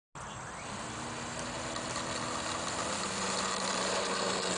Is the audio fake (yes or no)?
no